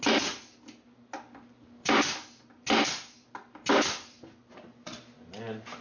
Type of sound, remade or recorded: recorded